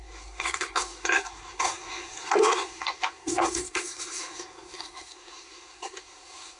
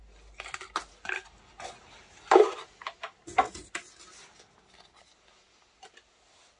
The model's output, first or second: first